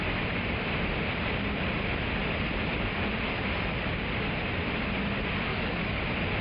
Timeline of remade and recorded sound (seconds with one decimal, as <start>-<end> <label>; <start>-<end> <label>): 0.0-5.5 recorded; 5.5-6.0 remade; 6.0-6.4 recorded